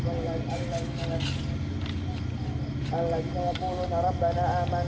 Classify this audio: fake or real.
real